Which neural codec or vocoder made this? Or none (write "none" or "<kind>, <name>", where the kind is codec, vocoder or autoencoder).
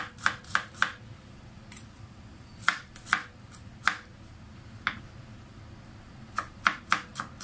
none